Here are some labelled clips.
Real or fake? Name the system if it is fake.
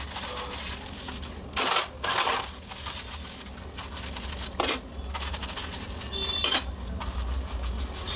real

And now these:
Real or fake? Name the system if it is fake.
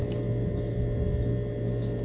real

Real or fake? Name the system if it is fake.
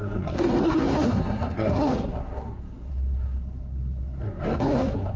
fake, codec, SNAC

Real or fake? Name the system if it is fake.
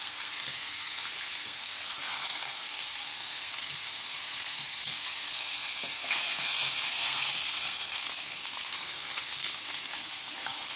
fake, codec, SNAC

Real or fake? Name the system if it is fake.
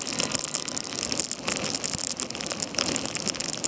real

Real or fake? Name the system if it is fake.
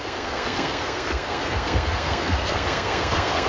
fake, codec, SNAC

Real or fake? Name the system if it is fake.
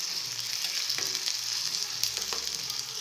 real